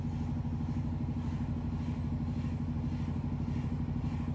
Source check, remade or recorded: recorded